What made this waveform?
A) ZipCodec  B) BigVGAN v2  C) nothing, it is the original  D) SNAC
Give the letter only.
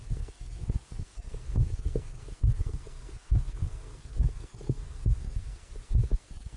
D